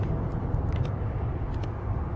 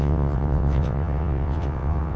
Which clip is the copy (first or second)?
second